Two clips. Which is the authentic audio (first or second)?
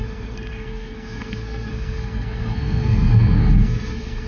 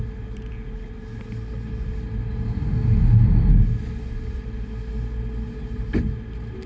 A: second